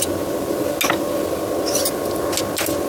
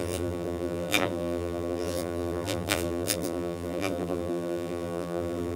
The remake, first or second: second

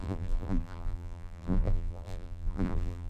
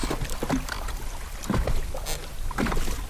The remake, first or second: first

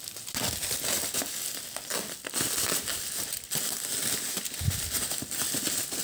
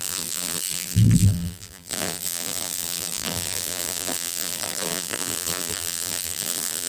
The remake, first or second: second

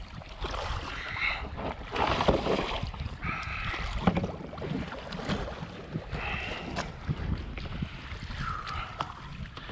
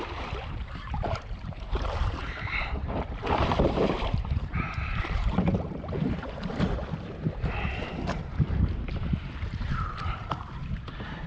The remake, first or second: second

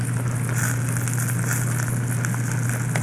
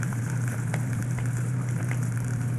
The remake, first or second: second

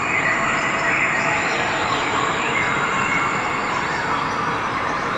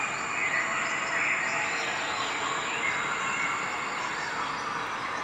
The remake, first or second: first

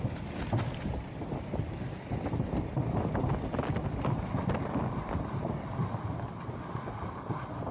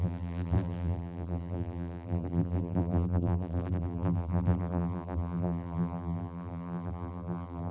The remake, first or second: second